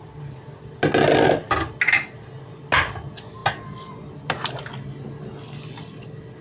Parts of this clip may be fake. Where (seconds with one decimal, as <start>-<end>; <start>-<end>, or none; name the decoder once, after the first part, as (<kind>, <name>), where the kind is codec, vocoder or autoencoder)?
none